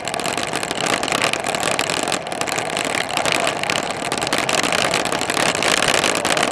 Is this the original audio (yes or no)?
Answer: yes